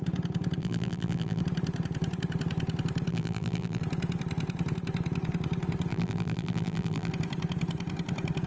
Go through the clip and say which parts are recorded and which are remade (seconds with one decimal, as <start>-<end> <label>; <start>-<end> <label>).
0.0-0.6 recorded; 0.6-1.4 remade; 1.4-3.1 recorded; 3.1-3.8 remade; 3.8-5.9 recorded; 5.9-7.1 remade; 7.1-8.5 recorded